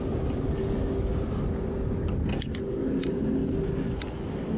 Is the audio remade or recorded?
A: recorded